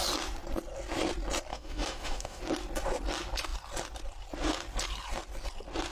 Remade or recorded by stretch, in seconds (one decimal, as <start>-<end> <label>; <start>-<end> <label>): 0.0-1.5 recorded; 1.5-2.4 remade; 2.4-5.9 recorded